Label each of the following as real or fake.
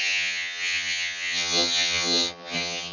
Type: fake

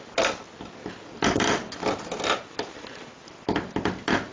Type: real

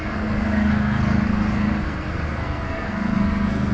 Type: fake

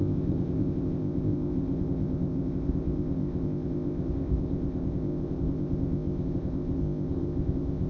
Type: fake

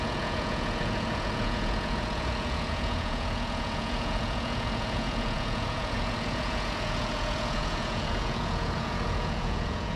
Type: fake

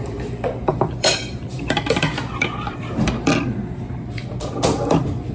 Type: fake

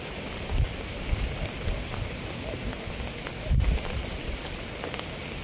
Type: real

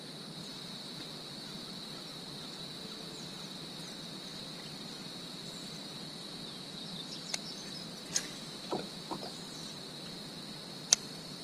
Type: real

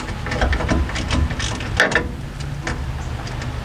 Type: real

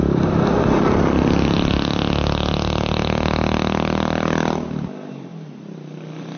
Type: real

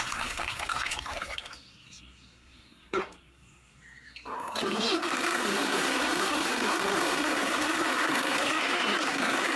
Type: fake